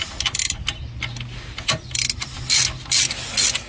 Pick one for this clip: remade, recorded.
recorded